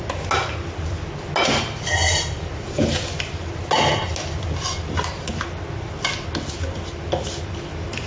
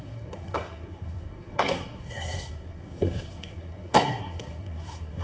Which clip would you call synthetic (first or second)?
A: second